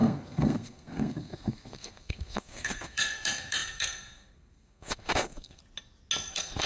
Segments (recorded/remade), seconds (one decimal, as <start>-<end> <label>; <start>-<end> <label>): 0.0-5.6 remade; 5.6-6.3 recorded; 6.3-6.7 remade